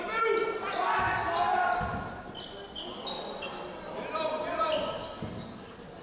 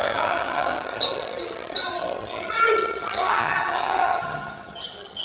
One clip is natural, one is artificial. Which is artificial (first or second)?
second